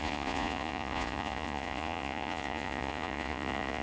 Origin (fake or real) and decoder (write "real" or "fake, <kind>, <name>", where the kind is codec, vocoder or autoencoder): fake, vocoder, Vocos